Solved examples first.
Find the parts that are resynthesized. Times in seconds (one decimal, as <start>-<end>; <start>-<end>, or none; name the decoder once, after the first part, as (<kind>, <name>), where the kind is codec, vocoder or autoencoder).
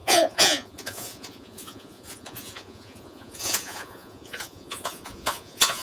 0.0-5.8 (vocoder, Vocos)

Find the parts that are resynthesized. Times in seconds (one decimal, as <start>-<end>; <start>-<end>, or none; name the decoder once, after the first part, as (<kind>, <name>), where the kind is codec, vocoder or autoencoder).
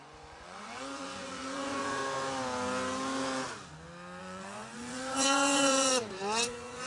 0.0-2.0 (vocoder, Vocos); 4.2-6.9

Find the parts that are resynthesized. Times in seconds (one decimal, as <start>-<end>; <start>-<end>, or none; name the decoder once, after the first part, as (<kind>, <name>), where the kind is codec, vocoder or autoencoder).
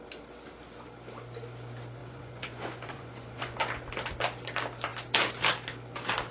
2.0-3.7 (vocoder, Vocos)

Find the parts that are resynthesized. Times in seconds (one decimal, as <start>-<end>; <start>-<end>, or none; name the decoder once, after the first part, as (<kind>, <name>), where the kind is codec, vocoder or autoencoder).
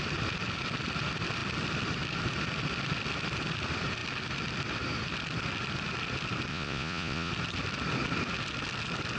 6.5-7.3 (vocoder, Vocos)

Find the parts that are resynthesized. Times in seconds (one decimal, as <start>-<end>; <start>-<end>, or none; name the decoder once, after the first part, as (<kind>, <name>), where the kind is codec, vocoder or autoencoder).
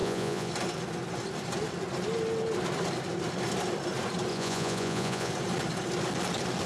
0.0-0.5 (vocoder, Vocos); 4.3-5.3